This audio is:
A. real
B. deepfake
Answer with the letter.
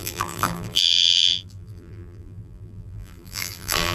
B